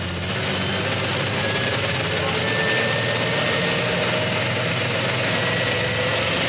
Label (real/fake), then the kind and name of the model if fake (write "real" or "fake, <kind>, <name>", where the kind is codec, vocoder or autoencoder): real